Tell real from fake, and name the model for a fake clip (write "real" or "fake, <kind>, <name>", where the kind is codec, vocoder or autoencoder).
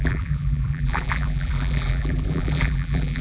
fake, vocoder, BigVGAN v2